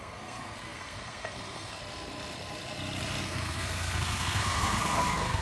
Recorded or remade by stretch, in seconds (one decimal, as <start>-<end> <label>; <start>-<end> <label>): 0.0-1.8 remade; 1.8-3.2 recorded; 3.2-5.4 remade